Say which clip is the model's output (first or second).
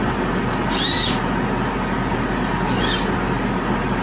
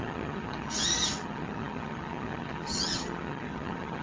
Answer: second